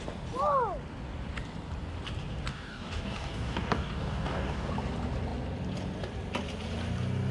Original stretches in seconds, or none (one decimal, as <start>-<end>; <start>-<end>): 0.0-2.5; 4.7-7.3